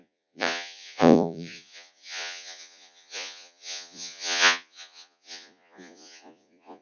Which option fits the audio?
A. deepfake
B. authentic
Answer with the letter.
A